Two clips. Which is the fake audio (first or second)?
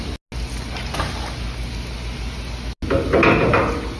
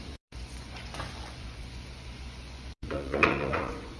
second